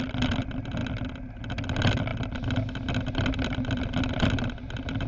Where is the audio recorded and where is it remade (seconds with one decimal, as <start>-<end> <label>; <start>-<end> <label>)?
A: 0.0-5.1 recorded